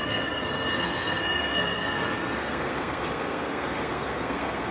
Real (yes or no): no